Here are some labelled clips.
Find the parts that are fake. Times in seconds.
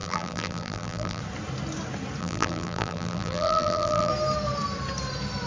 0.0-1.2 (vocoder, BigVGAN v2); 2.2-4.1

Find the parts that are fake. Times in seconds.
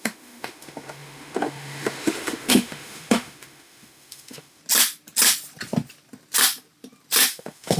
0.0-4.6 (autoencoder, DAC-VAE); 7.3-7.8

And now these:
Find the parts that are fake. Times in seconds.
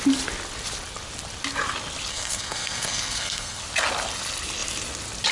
2.1-3.6 (codec, SNAC)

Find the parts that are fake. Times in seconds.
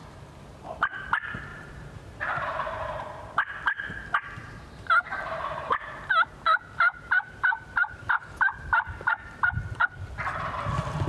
0.0-1.0 (vocoder, BigVGAN v2); 1.5-2.9; 4.4-8.5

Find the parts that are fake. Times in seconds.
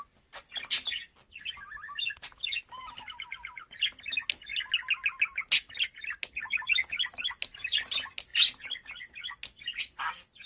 none